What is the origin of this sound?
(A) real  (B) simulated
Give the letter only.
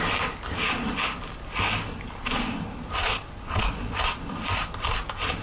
A